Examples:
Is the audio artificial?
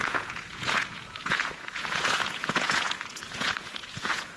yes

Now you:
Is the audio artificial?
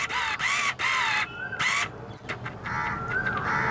no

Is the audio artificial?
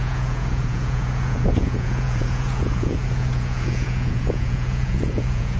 yes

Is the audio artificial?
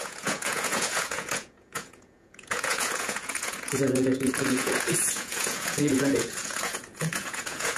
yes